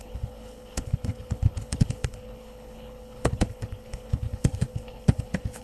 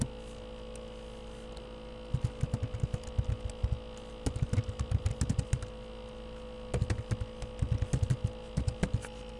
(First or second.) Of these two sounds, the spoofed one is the first